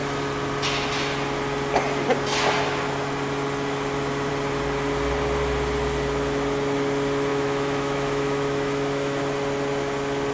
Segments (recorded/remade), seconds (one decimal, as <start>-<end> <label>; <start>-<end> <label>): 0.0-7.3 recorded; 7.3-9.2 remade; 9.2-10.3 recorded